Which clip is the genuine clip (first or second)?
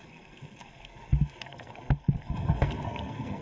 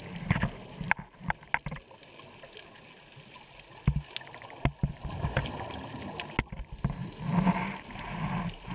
second